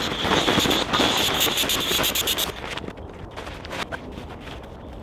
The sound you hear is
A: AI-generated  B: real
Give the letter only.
B